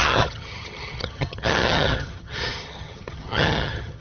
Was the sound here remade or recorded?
remade